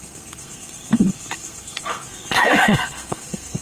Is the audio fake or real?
fake